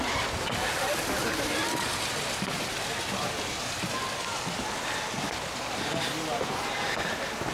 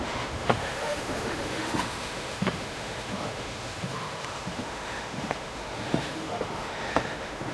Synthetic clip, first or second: second